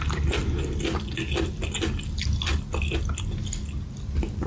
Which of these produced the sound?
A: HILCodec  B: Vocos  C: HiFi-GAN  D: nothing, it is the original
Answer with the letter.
D